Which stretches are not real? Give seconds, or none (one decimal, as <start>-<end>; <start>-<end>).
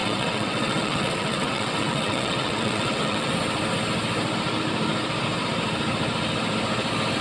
0.0-3.3